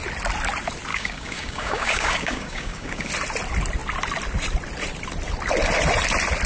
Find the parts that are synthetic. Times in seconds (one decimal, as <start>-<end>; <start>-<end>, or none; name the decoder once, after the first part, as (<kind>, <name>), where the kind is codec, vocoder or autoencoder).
0.9-3.1 (codec, DAC)